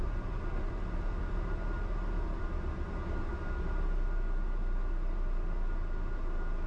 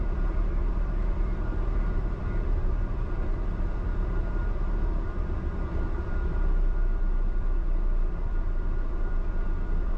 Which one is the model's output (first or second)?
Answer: second